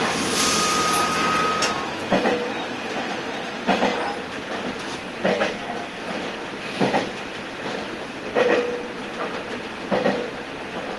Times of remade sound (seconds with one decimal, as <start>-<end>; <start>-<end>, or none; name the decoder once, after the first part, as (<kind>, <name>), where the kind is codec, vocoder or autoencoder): 5.3-6.0 (codec, SNAC)